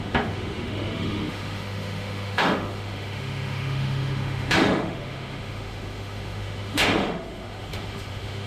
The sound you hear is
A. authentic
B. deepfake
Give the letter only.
B